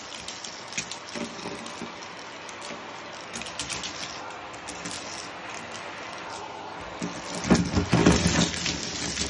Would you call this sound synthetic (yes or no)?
no